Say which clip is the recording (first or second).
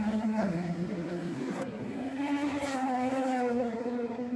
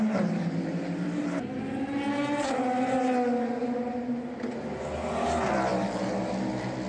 second